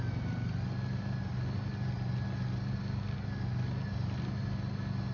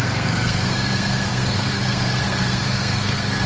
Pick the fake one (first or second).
second